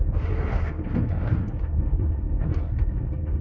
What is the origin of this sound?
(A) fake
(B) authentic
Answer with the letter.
A